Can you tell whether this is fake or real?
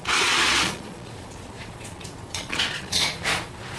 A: fake